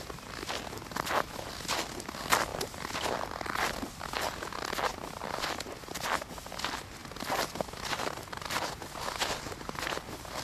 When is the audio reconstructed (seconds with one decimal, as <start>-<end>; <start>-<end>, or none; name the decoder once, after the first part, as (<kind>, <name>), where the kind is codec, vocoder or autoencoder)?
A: none